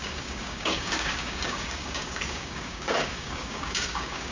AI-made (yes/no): yes